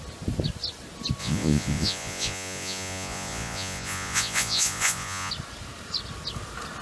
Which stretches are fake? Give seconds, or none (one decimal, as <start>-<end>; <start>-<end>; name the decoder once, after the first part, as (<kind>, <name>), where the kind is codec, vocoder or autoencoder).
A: 1.2-5.3 (vocoder, Vocos)